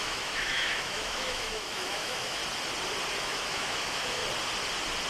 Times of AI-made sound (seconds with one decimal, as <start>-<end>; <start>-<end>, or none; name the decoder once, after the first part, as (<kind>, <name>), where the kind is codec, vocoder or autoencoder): 0.0-2.4 (autoencoder, DAC-VAE); 3.2-4.2